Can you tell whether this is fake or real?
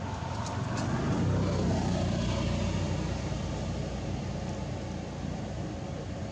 real